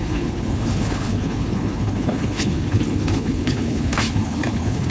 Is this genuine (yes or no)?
no